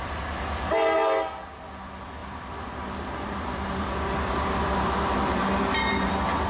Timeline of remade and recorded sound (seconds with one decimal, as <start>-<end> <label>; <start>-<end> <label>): 0.0-2.2 recorded; 2.2-6.1 remade; 6.1-6.5 recorded